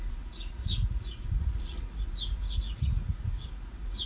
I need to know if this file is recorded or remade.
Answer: remade